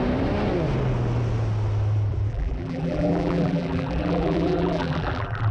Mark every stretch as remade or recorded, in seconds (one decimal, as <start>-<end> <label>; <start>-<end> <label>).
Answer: 0.0-2.3 recorded; 2.3-5.5 remade